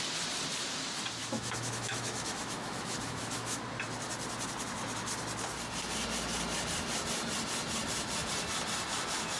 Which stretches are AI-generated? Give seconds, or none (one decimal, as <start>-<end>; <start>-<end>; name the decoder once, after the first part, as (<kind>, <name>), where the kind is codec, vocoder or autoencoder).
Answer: 1.2-3.6 (autoencoder, DAC-VAE)